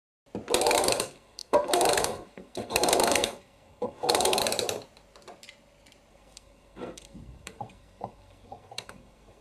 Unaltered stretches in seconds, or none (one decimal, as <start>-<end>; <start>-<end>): 0.0-0.6; 4.4-6.1

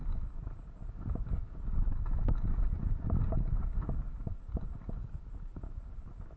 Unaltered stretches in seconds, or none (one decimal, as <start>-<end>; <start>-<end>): 0.0-6.4

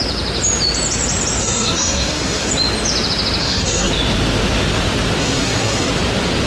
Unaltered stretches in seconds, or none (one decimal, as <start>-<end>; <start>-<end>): 0.0-1.4; 2.5-3.4; 3.9-5.2; 5.9-6.5

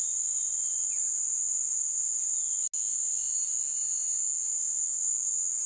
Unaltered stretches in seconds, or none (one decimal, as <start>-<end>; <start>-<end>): 0.0-5.7

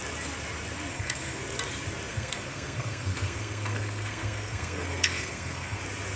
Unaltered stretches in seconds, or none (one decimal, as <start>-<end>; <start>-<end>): 0.0-0.9; 1.4-2.1; 5.8-6.2

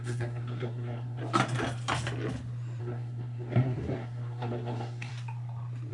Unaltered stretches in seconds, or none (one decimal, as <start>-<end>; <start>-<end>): 1.2-2.8; 5.1-5.9